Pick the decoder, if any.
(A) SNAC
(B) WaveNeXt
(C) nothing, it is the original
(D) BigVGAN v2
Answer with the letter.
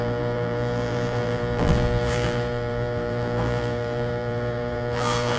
D